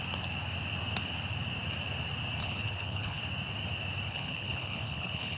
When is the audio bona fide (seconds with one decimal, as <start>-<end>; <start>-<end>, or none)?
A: 0.0-2.4; 3.2-4.1